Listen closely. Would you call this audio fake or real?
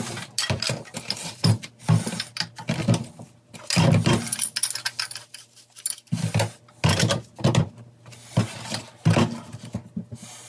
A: real